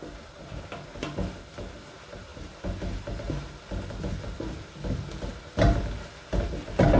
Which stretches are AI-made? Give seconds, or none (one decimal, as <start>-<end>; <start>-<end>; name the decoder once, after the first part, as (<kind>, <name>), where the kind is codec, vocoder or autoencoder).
none